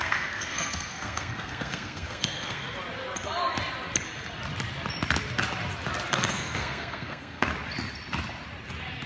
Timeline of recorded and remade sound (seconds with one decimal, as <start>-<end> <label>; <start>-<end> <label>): 0.0-2.6 remade; 2.6-6.1 recorded; 6.1-7.5 remade; 7.5-9.1 recorded